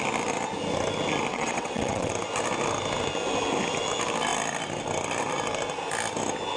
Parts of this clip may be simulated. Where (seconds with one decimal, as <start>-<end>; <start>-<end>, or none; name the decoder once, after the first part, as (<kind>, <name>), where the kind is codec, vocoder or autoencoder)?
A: 1.3-2.1 (vocoder, WaveNeXt)